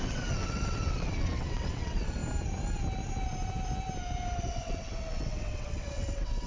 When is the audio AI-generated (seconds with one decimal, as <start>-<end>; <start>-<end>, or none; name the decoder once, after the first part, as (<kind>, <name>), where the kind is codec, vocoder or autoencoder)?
0.0-2.2 (vocoder, WaveNeXt); 4.4-6.5